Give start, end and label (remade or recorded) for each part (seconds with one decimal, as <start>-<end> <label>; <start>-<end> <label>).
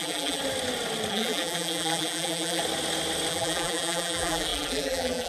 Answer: 0.0-0.4 remade; 0.4-1.1 recorded; 1.1-2.6 remade; 2.6-3.3 recorded; 3.3-5.3 remade